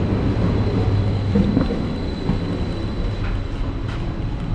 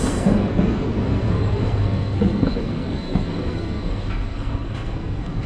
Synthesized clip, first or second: second